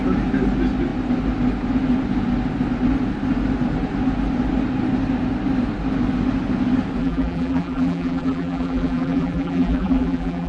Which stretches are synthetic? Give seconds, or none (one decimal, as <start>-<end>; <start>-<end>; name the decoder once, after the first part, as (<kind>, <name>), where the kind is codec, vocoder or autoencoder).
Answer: 7.0-10.5 (vocoder, BigVGAN v2)